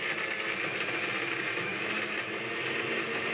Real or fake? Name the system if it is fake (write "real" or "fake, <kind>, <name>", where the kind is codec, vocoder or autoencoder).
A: real